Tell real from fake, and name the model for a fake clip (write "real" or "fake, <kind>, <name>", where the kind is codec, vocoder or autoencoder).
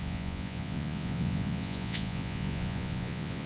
fake, vocoder, Vocos